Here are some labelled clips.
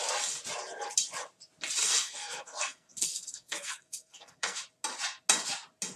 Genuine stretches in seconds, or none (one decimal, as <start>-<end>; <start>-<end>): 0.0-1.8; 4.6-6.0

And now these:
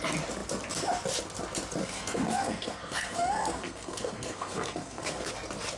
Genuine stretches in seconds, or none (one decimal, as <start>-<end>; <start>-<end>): 0.0-1.8; 5.3-5.8

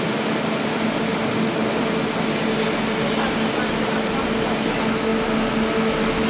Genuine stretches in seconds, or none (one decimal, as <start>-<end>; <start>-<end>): 0.0-6.3

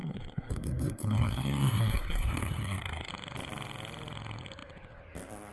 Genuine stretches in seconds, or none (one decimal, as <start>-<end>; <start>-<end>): 3.1-5.5